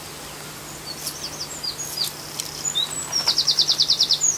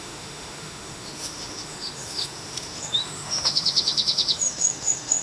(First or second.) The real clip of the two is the first